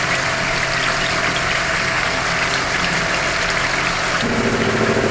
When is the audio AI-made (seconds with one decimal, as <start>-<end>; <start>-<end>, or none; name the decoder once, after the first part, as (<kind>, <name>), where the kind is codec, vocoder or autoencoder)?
1.7-2.2 (codec, SNAC)